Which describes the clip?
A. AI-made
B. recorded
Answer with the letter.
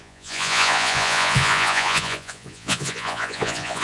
A